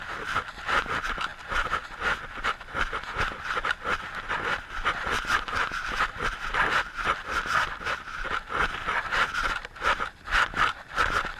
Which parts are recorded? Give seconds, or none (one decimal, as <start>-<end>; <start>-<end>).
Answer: 0.0-11.4